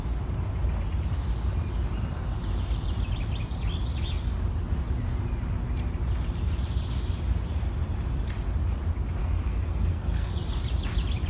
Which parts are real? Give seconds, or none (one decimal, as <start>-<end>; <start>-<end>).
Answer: 0.0-9.2; 10.3-11.3

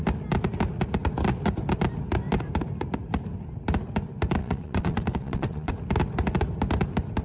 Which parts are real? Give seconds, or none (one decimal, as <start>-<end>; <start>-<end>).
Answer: 0.0-4.4; 5.7-7.2

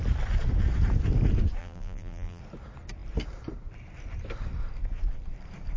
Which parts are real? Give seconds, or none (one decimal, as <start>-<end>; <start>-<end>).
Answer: 0.0-1.6; 2.4-5.8